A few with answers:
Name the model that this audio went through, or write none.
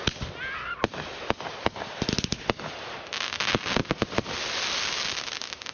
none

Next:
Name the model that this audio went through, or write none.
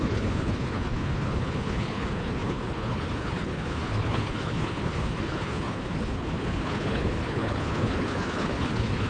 codec, HILCodec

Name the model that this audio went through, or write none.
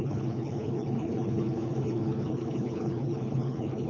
codec, HILCodec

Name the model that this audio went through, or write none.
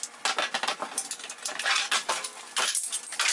none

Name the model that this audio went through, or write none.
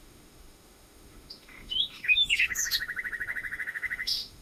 autoencoder, DAC-VAE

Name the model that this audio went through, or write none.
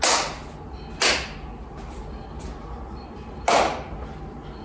none